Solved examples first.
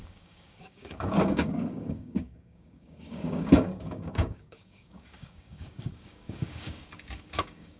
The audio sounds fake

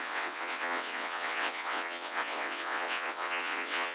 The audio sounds fake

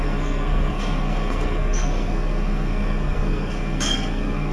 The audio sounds fake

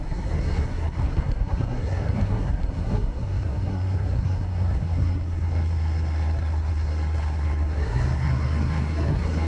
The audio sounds fake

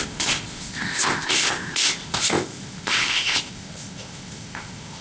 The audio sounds fake